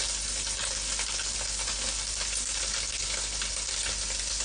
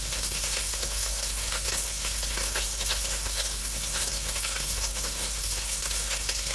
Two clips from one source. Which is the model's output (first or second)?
second